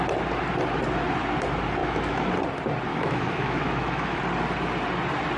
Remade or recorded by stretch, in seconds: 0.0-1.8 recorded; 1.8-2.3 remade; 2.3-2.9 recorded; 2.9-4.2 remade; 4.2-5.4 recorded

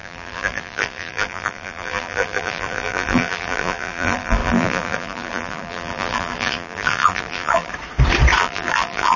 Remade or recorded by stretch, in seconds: 0.0-7.7 remade; 7.7-8.4 recorded; 8.4-9.2 remade

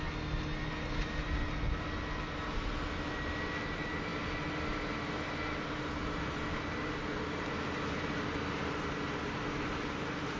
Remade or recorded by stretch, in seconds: 0.0-10.4 recorded

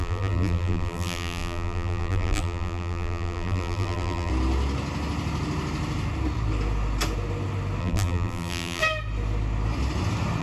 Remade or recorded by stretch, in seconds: 0.0-4.3 remade; 4.3-7.8 recorded; 7.8-8.8 remade; 8.8-10.4 recorded